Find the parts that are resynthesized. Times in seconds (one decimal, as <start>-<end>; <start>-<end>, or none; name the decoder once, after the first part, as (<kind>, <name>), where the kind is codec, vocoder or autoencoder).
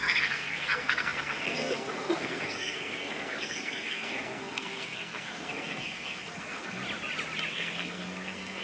0.0-6.8 (codec, SNAC); 7.5-8.6